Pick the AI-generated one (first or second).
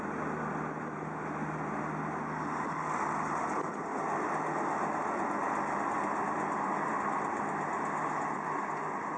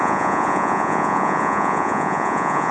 second